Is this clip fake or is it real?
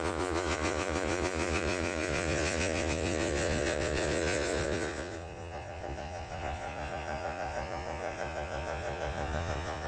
fake